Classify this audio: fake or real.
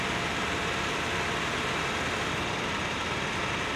real